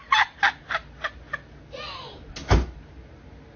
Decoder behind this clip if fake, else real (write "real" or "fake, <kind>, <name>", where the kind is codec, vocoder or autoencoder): real